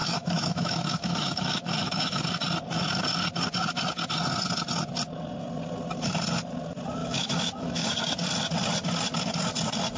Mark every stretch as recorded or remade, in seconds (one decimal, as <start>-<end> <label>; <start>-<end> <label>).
0.0-2.2 remade; 2.2-7.0 recorded; 7.0-7.9 remade; 7.9-10.0 recorded

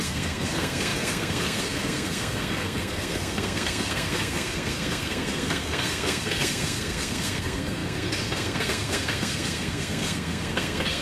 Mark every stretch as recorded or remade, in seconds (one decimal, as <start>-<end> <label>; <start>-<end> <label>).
0.0-11.0 remade

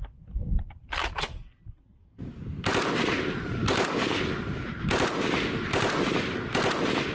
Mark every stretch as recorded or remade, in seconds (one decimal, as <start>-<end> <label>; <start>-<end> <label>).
0.0-2.0 recorded; 2.0-2.7 remade; 2.7-3.6 recorded; 3.6-4.2 remade; 4.2-7.1 recorded